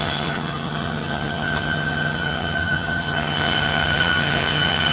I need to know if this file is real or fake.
fake